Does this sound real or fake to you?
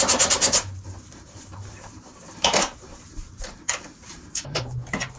fake